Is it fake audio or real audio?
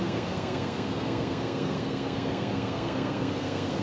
fake